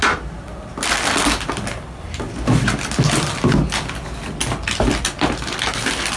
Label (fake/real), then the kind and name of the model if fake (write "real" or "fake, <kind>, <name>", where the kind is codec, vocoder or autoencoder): real